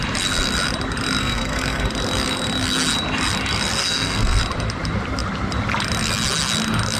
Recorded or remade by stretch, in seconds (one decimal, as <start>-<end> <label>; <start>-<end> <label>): 0.0-1.2 recorded; 1.2-1.9 remade; 1.9-3.8 recorded; 3.8-4.4 remade; 4.4-7.0 recorded